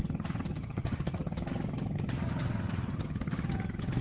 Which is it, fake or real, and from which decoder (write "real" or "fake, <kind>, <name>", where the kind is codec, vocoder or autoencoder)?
fake, vocoder, HiFi-GAN